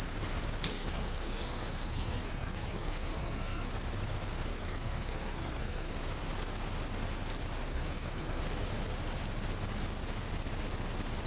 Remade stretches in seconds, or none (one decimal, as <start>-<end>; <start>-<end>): 0.7-3.7; 4.5-5.9; 7.7-8.4